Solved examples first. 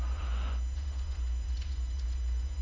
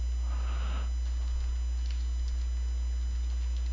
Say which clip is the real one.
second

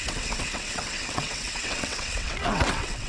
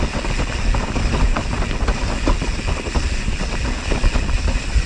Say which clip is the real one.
second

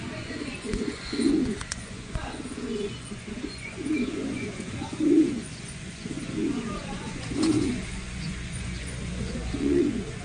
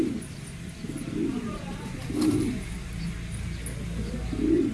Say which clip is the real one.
second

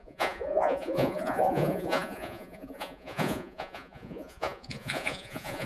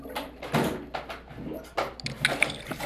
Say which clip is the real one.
second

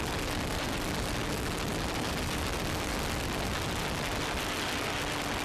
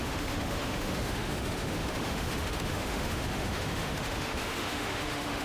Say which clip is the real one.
first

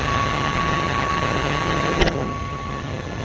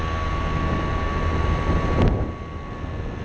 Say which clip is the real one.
second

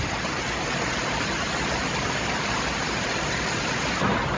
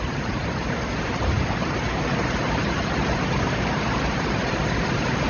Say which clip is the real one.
first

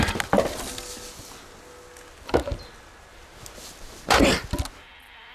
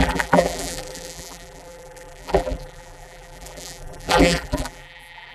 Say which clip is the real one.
first